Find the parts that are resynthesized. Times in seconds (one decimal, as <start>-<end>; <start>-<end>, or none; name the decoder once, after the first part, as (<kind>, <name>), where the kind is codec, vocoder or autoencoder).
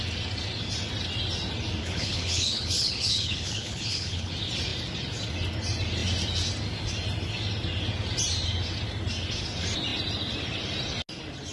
1.8-4.3 (codec, HILCodec)